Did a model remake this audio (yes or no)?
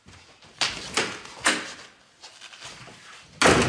no